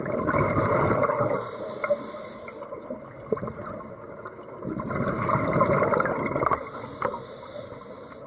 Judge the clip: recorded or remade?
recorded